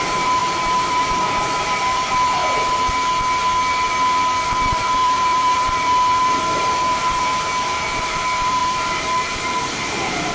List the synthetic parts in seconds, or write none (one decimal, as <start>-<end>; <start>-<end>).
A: 0.0-2.4; 4.5-10.3